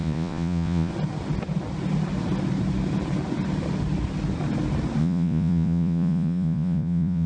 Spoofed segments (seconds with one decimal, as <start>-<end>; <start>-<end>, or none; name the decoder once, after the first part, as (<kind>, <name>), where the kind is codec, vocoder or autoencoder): 0.0-0.9 (vocoder, Vocos); 5.0-7.3